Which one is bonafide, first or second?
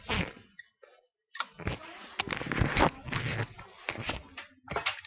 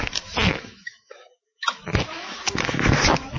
first